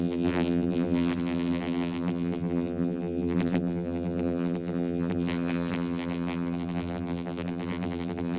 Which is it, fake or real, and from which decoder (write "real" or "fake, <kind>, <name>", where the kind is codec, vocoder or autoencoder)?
fake, vocoder, BigVGAN v2